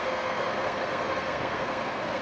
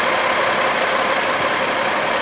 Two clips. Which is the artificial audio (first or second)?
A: first